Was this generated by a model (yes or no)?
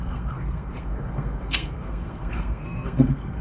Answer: yes